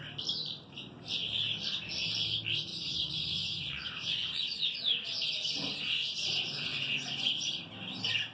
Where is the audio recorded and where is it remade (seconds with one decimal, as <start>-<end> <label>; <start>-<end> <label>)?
0.0-2.7 recorded; 2.7-5.1 remade; 5.1-6.7 recorded; 6.7-7.6 remade; 7.6-8.3 recorded